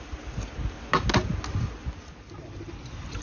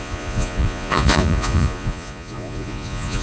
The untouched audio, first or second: first